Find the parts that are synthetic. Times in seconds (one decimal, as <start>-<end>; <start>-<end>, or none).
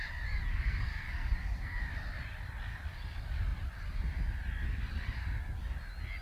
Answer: 0.5-1.8